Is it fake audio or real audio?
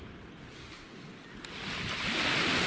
real